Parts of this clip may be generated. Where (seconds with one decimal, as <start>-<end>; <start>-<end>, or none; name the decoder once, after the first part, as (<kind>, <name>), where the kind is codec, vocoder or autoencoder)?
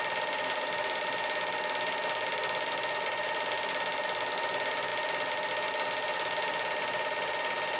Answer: none